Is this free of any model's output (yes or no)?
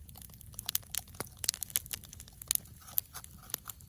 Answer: yes